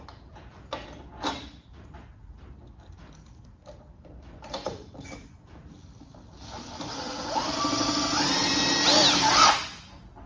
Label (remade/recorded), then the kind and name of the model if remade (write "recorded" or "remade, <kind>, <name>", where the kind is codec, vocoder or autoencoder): recorded